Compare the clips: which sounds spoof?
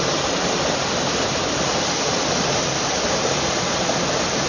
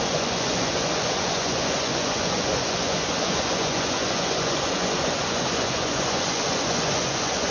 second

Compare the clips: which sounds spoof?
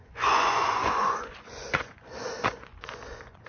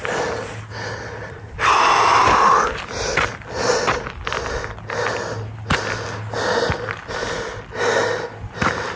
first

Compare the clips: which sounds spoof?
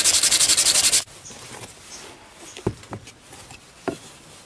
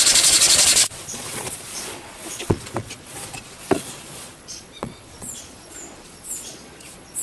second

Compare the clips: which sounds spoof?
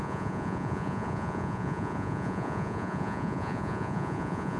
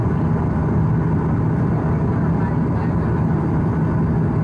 first